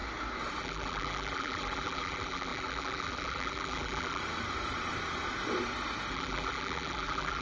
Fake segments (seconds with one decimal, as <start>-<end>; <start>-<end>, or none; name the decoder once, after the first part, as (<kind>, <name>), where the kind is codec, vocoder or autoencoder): 0.6-4.2 (vocoder, BigVGAN v2); 6.1-7.4